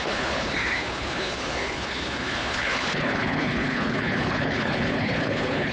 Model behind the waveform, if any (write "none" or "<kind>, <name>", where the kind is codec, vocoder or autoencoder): codec, HILCodec